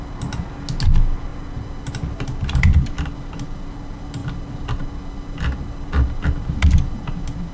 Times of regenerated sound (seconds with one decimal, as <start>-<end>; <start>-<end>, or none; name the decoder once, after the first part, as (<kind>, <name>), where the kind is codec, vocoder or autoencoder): none